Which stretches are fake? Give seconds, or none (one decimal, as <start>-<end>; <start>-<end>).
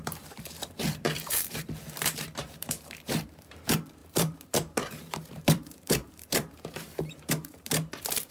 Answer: 0.0-8.3